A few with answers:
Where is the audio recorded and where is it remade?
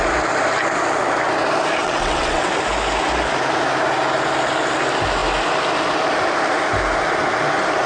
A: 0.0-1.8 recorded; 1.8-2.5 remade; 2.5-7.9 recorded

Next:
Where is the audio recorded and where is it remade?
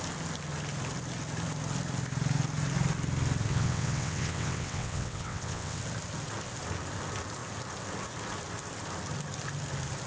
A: 0.0-3.5 recorded; 3.5-5.8 remade; 5.8-10.1 recorded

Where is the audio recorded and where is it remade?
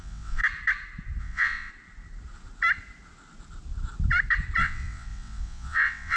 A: 0.0-0.4 remade; 0.4-1.2 recorded; 1.2-1.7 remade; 1.7-4.6 recorded; 4.6-6.2 remade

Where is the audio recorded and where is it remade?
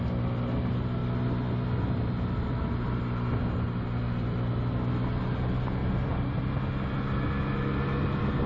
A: 0.0-8.5 recorded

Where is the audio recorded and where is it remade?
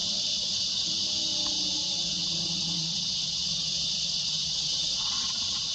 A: 0.0-0.9 remade; 0.9-1.9 recorded; 1.9-5.3 remade; 5.3-5.7 recorded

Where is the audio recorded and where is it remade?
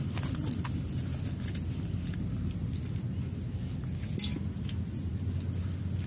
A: 0.0-6.1 recorded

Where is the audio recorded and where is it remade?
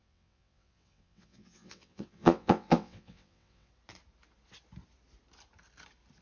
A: 0.0-3.7 remade; 3.7-6.2 recorded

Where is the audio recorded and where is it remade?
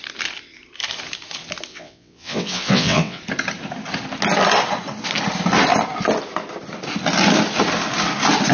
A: 0.0-1.7 recorded; 1.7-3.2 remade; 3.2-8.5 recorded